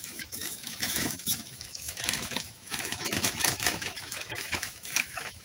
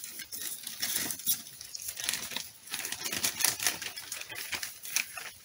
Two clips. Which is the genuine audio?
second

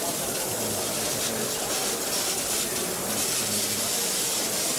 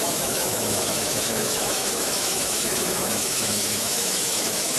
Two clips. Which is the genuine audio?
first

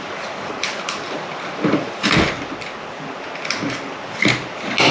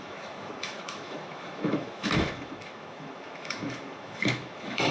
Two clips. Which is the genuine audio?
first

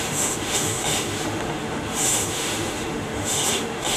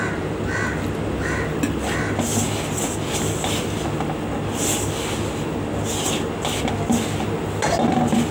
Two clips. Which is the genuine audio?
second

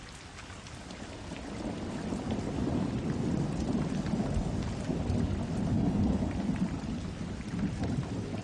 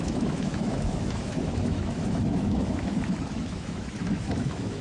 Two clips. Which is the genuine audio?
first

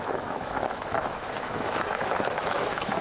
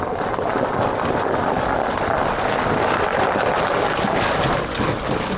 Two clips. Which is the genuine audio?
second